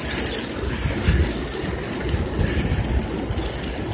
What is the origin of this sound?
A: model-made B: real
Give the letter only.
B